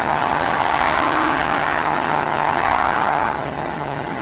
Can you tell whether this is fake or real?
fake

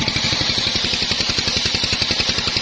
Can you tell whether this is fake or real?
real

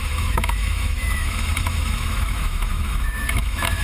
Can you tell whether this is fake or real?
fake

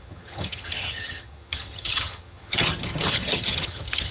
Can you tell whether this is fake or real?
fake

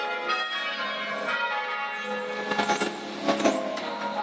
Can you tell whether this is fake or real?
real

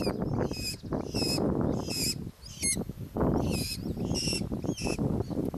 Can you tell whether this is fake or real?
real